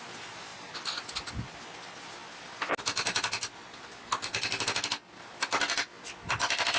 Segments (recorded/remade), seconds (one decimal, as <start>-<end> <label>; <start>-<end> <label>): 0.0-6.8 recorded